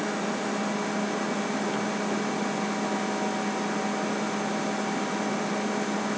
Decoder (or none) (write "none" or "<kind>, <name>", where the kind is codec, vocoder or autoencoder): none